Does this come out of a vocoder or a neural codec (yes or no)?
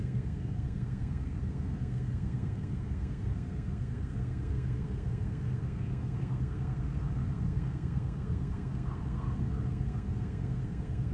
yes